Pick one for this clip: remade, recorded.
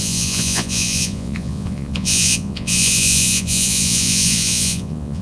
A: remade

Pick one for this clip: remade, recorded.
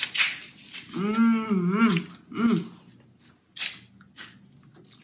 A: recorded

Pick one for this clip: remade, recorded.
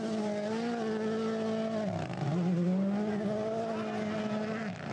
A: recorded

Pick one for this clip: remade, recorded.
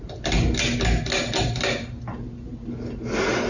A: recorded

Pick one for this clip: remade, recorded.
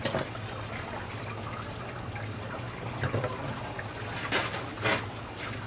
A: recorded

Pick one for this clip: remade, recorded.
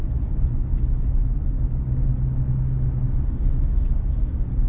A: recorded